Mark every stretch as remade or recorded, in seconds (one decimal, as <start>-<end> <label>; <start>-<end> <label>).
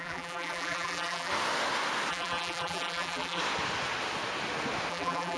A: 0.0-1.3 remade; 1.3-2.1 recorded; 2.1-3.4 remade; 3.4-4.9 recorded; 4.9-5.4 remade